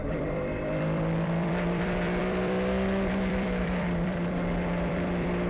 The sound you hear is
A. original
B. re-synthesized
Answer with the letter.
B